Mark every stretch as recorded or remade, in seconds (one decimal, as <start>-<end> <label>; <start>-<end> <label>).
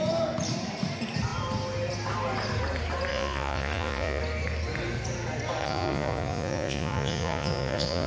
0.0-3.1 recorded; 3.1-4.2 remade; 4.2-5.6 recorded; 5.6-8.1 remade